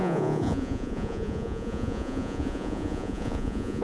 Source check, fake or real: fake